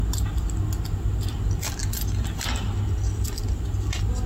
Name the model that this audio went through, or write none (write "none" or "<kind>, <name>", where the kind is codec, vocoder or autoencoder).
none